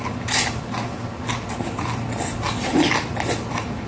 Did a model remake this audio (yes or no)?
no